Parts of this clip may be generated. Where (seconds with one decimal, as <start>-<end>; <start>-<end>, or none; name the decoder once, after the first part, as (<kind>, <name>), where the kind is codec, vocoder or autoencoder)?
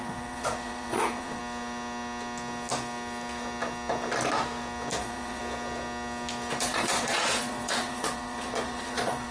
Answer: 0.0-1.4 (vocoder, Vocos); 5.0-5.4; 6.6-9.3